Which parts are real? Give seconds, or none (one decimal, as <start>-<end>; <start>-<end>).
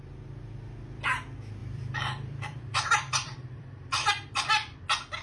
0.0-1.6; 4.5-5.2